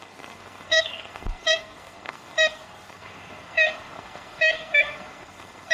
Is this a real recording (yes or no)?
no